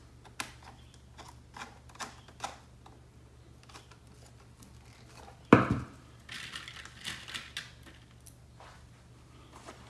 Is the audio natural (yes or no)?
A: yes